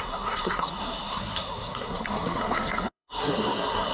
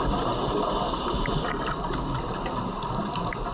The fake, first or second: first